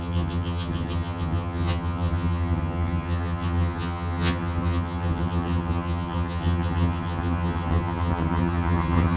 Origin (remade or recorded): remade